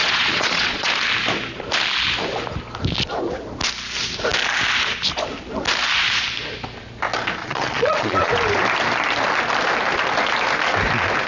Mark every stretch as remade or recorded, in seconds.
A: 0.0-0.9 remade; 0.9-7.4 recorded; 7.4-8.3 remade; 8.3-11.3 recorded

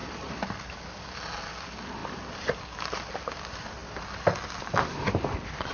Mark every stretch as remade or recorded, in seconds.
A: 0.0-3.8 remade; 3.8-4.9 recorded; 4.9-5.7 remade